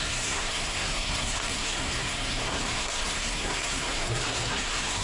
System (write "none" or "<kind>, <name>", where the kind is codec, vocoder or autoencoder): codec, SNAC